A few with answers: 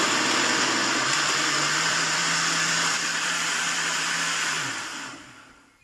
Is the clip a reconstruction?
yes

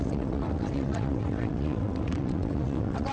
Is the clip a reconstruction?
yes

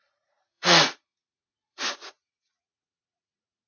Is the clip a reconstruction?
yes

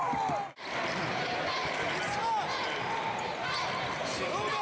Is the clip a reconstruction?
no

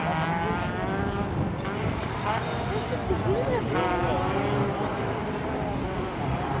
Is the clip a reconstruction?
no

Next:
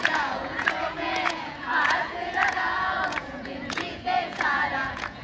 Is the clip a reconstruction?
yes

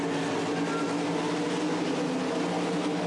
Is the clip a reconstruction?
no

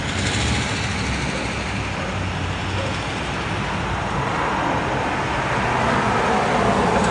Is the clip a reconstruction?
no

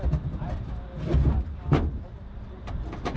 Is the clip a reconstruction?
no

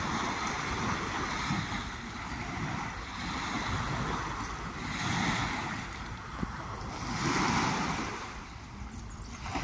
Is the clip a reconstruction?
no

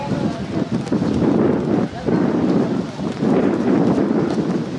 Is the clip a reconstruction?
no